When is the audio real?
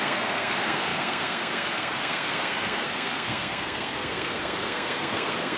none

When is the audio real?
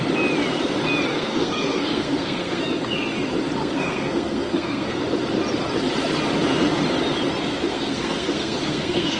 0.0-1.1; 2.6-3.6; 5.0-7.7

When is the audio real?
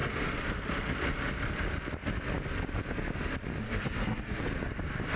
0.0-3.6; 4.4-5.2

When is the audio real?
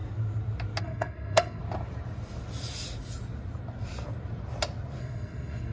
0.0-0.8; 1.6-5.0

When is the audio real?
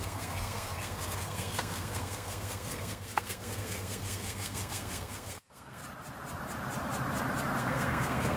5.8-7.6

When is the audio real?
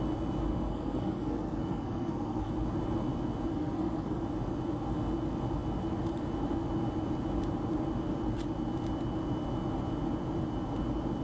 0.0-0.5; 2.5-3.5; 4.2-11.2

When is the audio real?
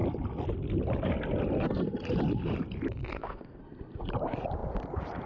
0.0-3.1; 3.6-5.3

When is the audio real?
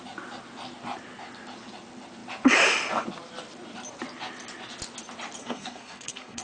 0.0-5.4